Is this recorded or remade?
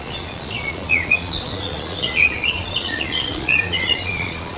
remade